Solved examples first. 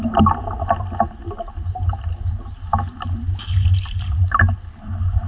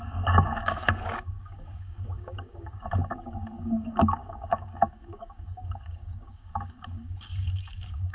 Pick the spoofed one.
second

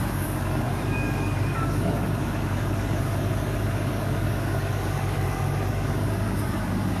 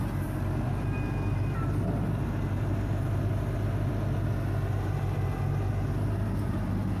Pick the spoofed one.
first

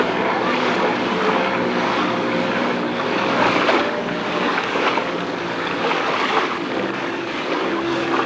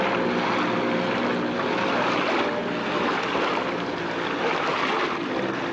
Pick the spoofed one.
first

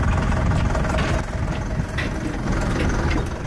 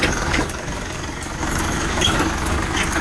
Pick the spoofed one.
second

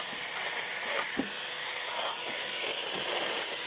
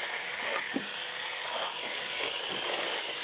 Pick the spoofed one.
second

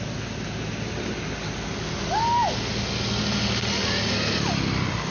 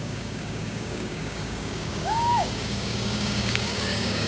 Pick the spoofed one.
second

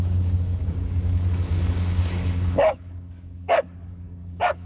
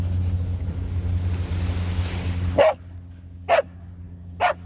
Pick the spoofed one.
first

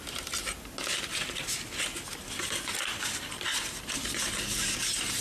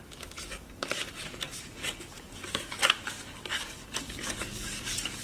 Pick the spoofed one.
second